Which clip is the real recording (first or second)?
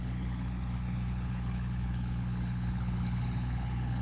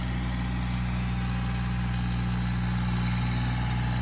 second